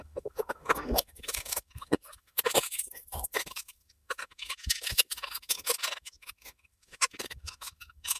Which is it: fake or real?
fake